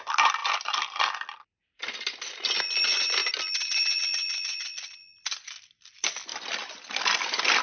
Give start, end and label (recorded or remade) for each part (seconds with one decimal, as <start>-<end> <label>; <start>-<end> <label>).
0.0-7.6 recorded